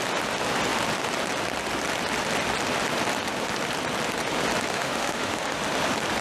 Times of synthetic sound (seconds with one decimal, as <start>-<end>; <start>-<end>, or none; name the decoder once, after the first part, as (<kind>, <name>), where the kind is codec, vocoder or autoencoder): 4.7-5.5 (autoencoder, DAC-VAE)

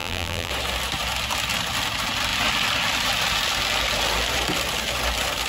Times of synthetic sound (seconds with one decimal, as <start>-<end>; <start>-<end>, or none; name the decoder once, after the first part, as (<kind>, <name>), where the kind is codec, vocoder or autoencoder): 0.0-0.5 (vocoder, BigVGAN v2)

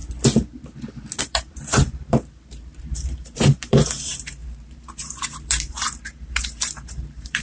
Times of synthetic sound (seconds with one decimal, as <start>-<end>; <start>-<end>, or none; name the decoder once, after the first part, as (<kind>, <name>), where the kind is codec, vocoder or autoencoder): 1.2-7.4 (vocoder, BigVGAN v2)

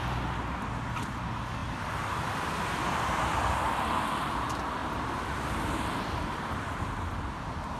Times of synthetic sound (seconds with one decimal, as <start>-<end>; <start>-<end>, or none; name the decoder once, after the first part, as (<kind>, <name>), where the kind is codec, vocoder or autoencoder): none

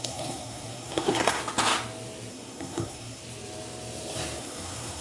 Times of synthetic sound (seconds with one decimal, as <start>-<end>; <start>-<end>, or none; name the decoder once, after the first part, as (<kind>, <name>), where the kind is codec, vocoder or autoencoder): 0.0-1.4 (codec, SNAC); 2.3-3.2; 4.4-5.0